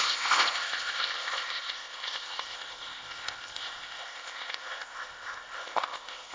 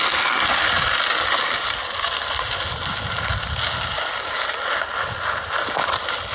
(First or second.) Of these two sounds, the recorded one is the second